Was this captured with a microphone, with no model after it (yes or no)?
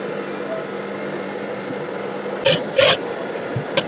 yes